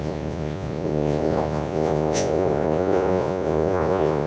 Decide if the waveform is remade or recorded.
remade